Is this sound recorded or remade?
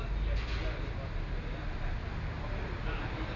recorded